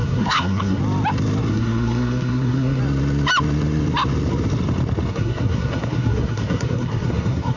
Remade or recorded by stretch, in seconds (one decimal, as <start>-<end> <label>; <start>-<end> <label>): 0.0-0.8 remade; 0.8-1.5 recorded; 1.5-2.8 remade; 2.8-5.1 recorded; 5.1-7.6 remade